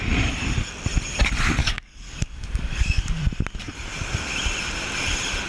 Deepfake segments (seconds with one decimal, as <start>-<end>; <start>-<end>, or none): 1.6-3.2